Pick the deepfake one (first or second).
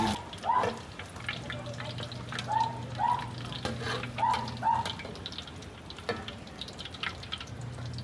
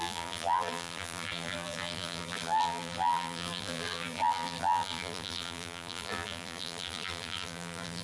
second